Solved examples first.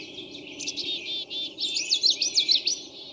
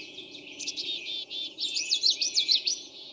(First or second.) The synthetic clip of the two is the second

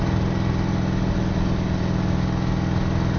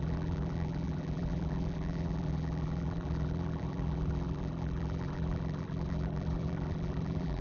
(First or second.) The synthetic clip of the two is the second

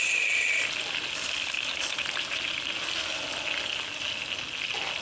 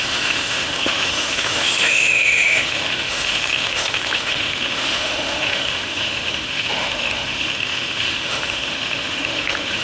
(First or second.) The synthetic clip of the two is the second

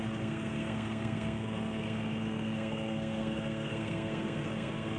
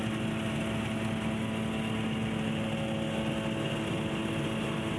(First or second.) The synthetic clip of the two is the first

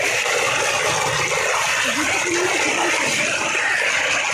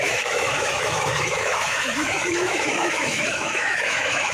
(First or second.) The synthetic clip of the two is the second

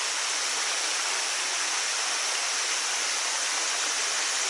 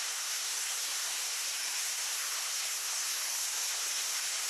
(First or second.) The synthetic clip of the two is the second